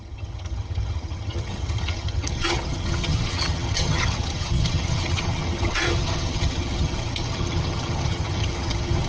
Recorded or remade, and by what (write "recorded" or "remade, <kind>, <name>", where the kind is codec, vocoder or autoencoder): remade, vocoder, HiFi-GAN